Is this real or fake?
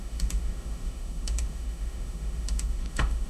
fake